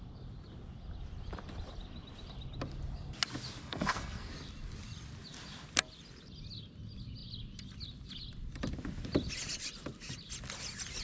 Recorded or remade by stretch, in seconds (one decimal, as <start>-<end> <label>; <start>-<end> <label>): 0.0-3.6 recorded; 3.6-4.3 remade; 4.3-11.0 recorded